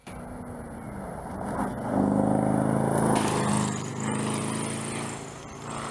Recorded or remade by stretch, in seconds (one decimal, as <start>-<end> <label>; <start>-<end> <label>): 0.0-5.9 recorded